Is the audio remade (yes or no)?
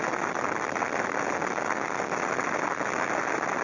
no